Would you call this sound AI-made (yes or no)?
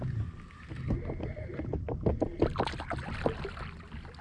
no